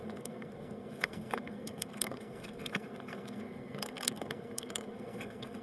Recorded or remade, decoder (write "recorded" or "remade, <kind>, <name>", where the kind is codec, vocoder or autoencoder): remade, codec, SNAC